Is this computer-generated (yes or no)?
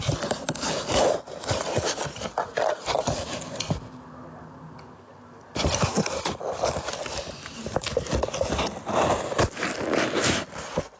no